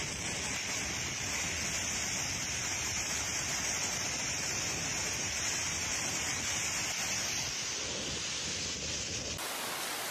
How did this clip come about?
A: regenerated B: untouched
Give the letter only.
A